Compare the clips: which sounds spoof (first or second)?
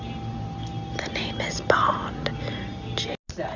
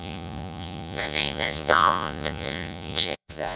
second